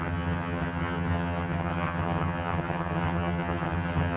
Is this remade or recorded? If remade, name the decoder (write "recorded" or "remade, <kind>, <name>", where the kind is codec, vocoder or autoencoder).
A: remade, vocoder, HiFi-GAN